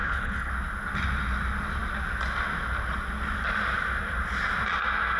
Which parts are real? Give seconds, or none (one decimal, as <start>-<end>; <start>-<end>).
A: 0.5-5.2